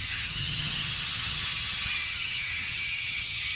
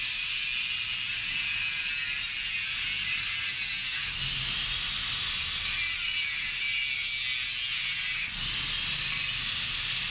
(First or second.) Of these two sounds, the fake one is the first